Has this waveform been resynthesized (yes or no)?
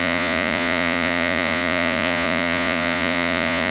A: yes